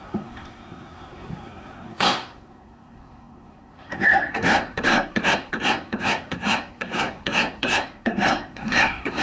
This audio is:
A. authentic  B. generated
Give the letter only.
B